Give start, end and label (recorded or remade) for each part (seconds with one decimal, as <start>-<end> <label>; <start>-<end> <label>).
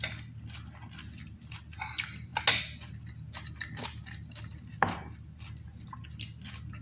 0.0-6.8 recorded